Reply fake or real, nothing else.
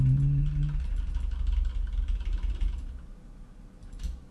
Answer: real